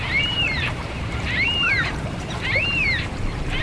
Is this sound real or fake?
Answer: fake